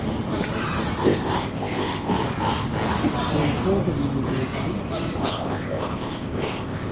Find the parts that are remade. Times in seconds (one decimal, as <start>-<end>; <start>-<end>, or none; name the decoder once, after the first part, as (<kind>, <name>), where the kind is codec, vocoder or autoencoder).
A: 1.0-2.1 (codec, ZipCodec); 5.2-6.9